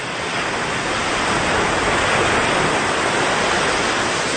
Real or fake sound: real